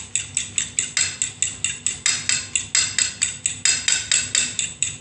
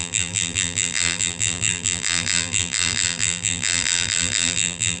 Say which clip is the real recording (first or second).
first